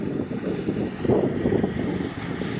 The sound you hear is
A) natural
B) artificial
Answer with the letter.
A